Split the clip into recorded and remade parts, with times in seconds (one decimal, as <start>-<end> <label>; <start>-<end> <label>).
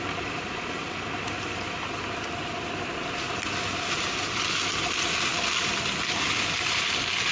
0.0-7.3 recorded